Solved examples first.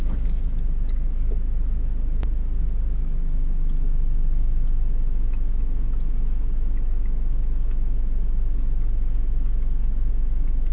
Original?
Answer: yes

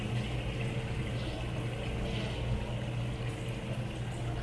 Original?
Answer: yes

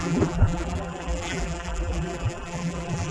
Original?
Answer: no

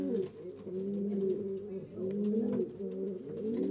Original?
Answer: yes